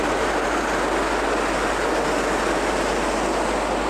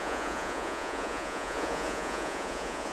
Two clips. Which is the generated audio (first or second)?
second